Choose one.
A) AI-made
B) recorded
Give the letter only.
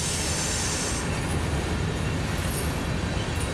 B